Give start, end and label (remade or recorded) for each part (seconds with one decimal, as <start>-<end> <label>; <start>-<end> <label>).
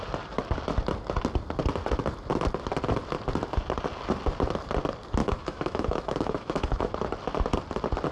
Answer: 0.0-5.2 recorded; 5.2-6.9 remade; 6.9-8.1 recorded